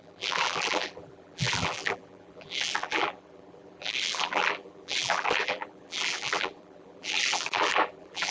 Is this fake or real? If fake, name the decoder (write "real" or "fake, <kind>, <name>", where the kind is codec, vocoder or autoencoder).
fake, vocoder, BigVGAN v2